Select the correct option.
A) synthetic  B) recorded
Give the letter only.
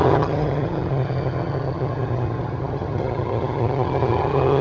A